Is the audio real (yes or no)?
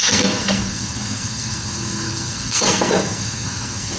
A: no